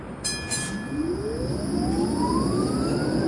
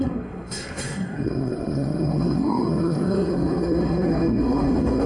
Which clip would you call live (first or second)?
first